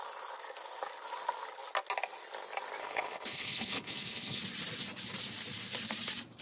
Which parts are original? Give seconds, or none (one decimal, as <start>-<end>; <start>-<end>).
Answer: 0.0-2.8; 4.4-6.4